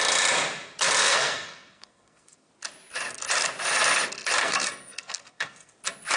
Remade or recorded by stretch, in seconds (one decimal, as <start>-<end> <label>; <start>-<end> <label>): 0.0-1.0 recorded; 1.0-2.5 remade; 2.5-4.4 recorded; 4.4-5.7 remade; 5.7-6.2 recorded